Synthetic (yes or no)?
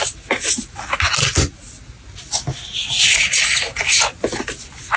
no